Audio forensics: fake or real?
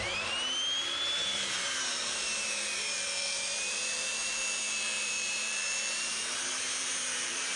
fake